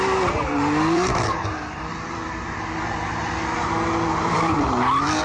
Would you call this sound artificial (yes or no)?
yes